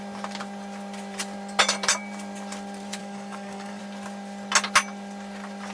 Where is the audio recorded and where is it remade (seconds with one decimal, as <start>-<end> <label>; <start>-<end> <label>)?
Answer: 0.0-3.0 recorded; 3.0-3.8 remade; 3.8-5.7 recorded

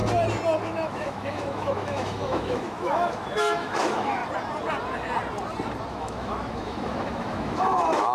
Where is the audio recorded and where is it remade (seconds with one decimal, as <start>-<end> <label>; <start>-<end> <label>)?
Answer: 0.0-0.6 recorded; 0.6-4.2 remade; 4.2-5.9 recorded; 5.9-8.1 remade

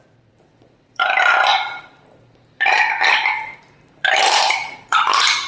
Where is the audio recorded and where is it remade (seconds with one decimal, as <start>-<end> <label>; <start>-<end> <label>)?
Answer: 0.0-5.5 remade

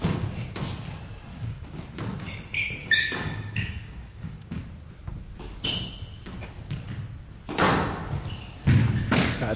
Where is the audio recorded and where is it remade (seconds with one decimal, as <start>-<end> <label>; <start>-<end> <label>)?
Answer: 0.0-1.3 recorded; 1.3-1.8 remade; 1.8-2.8 recorded; 2.8-4.6 remade; 4.6-9.6 recorded

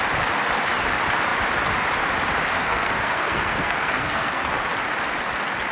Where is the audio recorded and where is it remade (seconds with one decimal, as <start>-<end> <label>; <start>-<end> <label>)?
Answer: 0.0-2.5 recorded; 2.5-4.5 remade; 4.5-5.7 recorded

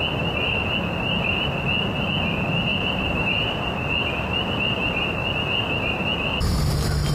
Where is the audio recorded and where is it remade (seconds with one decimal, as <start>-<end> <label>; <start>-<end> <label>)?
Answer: 0.0-2.7 recorded; 2.7-3.6 remade; 3.6-7.1 recorded